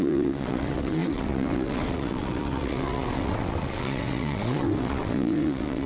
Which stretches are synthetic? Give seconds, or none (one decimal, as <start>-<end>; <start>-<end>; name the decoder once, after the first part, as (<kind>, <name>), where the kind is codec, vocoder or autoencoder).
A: 0.0-5.9 (vocoder, WaveNeXt)